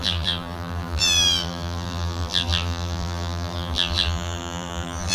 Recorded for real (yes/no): no